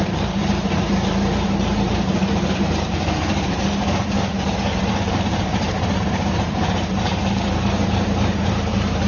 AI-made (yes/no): yes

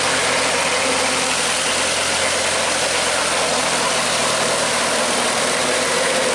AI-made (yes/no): no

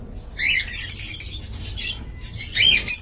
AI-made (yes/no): no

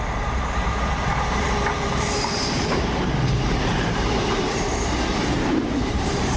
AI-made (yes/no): yes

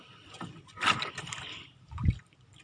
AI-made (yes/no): no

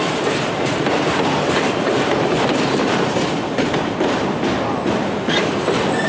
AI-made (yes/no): yes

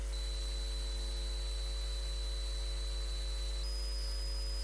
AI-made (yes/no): no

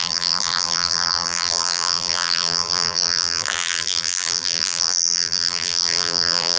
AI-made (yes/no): yes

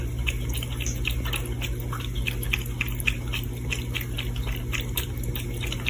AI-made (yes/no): no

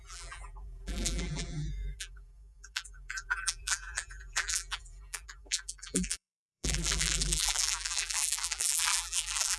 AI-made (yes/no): yes